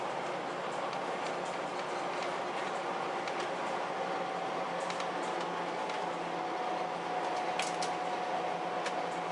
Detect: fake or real real